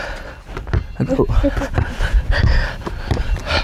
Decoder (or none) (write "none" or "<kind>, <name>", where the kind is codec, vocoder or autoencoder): none